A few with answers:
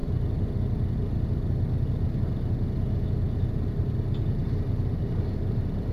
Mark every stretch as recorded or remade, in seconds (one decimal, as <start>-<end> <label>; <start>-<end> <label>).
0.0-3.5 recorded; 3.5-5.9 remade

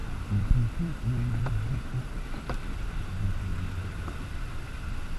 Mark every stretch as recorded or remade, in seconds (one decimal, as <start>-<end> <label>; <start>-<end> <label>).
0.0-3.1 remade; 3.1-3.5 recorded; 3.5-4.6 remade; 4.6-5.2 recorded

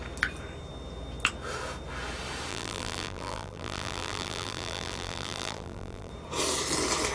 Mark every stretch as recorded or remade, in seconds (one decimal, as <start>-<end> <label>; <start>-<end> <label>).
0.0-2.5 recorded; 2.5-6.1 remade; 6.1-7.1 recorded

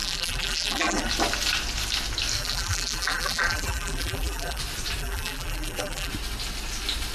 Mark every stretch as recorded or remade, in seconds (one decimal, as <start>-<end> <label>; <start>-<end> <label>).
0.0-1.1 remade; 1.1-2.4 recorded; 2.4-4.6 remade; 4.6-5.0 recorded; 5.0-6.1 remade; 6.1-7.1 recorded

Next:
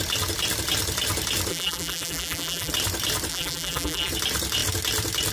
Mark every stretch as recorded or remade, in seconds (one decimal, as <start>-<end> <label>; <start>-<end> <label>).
0.0-1.5 recorded; 1.5-2.7 remade; 2.7-3.3 recorded; 3.3-4.1 remade; 4.1-5.3 recorded

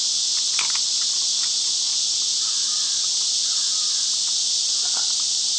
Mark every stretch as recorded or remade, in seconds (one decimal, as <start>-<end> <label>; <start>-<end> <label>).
0.0-5.6 recorded

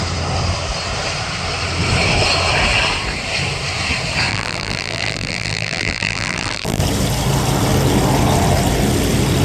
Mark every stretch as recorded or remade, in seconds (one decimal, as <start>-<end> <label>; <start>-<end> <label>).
0.0-4.3 recorded; 4.3-6.8 remade; 6.8-9.4 recorded